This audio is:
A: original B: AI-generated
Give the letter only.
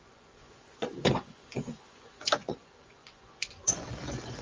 B